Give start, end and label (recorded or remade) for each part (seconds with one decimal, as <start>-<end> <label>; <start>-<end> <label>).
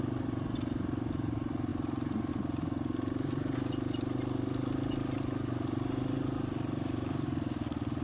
0.0-8.0 recorded